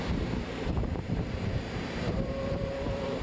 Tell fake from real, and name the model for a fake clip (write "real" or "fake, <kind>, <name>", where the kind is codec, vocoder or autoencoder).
fake, vocoder, BigVGAN v2